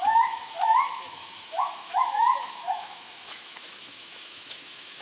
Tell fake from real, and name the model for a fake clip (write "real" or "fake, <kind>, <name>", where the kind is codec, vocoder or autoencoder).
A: fake, autoencoder, DAC-VAE